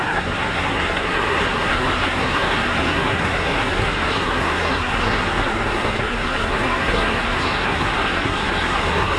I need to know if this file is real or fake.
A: fake